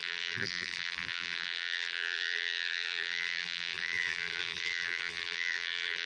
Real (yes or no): no